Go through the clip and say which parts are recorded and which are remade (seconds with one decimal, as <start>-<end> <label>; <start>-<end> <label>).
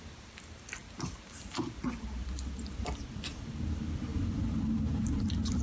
0.0-5.6 recorded